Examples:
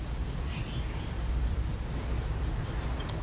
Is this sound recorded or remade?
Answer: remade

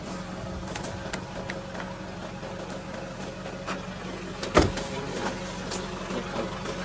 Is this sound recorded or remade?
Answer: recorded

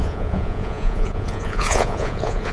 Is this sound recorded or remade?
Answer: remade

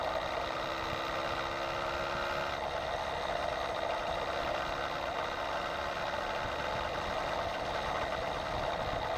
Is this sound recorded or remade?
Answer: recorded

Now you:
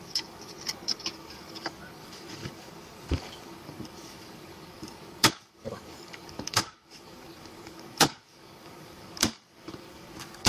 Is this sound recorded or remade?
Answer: remade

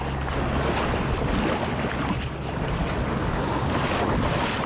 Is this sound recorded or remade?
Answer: recorded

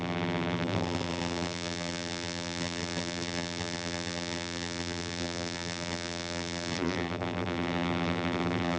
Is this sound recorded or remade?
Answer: remade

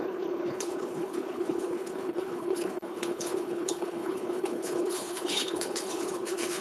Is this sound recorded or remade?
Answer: remade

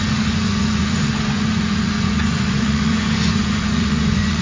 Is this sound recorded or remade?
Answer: remade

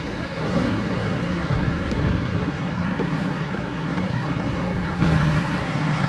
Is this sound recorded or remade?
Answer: remade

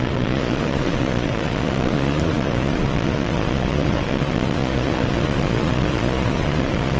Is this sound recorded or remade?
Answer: remade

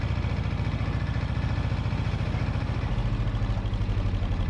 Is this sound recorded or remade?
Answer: recorded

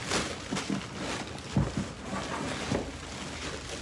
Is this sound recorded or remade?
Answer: recorded